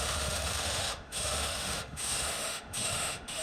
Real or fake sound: fake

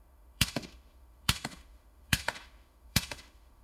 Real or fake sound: fake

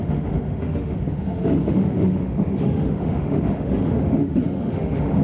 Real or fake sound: fake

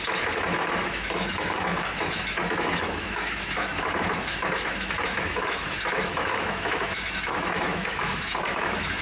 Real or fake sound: fake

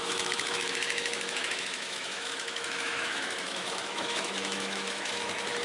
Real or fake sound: fake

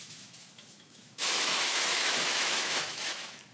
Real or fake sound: fake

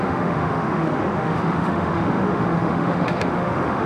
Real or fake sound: fake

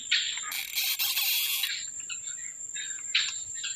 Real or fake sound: real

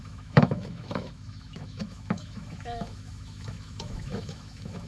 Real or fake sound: fake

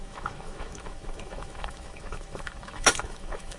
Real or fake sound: fake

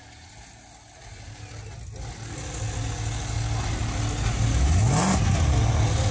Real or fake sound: real